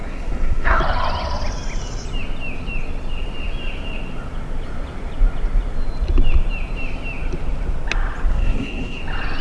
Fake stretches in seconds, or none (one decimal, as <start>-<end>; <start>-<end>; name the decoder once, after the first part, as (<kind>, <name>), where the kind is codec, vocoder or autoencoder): 0.0-0.8 (codec, SNAC); 8.3-9.0